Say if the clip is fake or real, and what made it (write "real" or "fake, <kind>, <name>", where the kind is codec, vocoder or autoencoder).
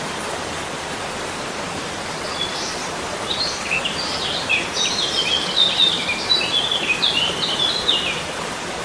fake, vocoder, BigVGAN v2